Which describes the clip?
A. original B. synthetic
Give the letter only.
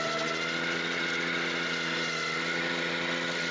A